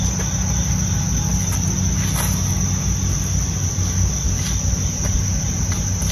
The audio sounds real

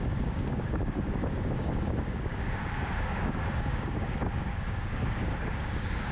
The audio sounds fake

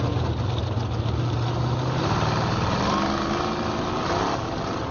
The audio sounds real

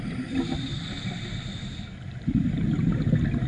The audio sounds real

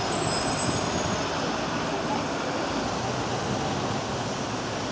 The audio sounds real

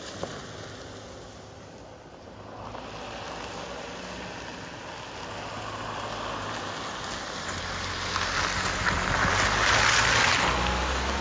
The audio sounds real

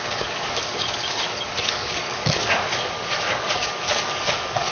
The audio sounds fake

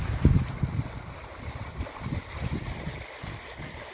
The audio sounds real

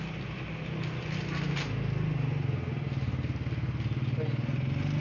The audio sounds real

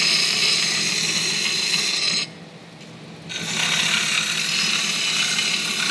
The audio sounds real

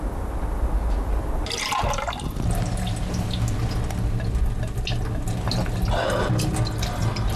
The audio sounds real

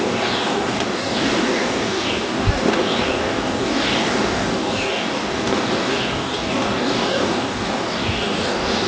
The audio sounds fake